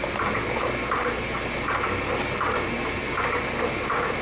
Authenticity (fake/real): real